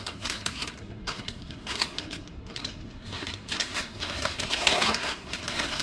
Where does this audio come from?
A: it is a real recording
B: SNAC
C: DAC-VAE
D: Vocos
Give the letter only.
B